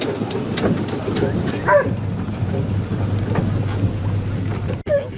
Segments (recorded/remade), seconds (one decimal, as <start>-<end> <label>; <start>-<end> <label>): 0.0-2.9 remade; 2.9-4.0 recorded; 4.0-5.2 remade